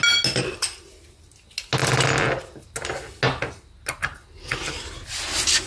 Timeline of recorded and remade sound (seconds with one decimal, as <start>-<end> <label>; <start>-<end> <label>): 0.0-5.7 recorded